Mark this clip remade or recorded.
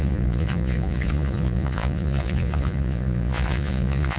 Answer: remade